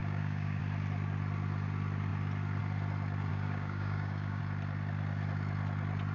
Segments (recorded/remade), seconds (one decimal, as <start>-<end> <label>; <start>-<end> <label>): 0.0-0.6 remade; 0.6-3.3 recorded; 3.3-4.4 remade; 4.4-6.1 recorded